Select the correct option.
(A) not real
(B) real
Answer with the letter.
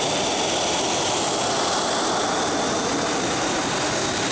B